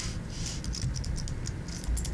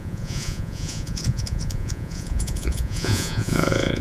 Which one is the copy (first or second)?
second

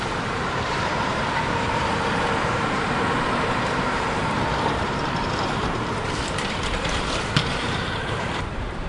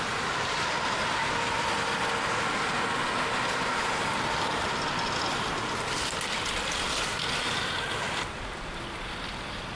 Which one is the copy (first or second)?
first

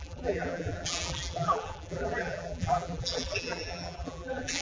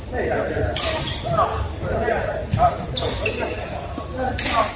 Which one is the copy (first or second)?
first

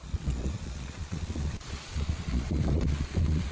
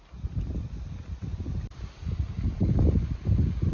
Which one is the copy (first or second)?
first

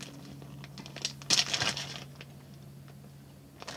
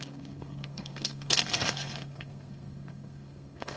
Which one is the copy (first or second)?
second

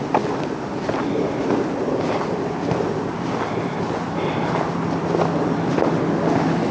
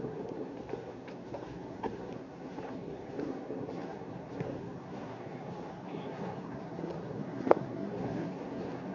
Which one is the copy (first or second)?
second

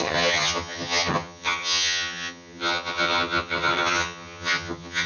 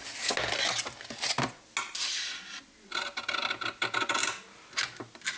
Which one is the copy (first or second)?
first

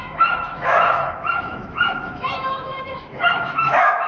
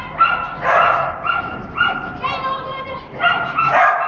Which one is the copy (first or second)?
first